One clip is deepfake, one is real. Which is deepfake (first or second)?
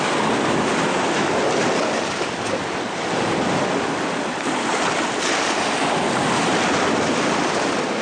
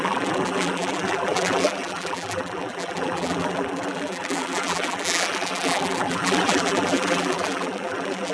second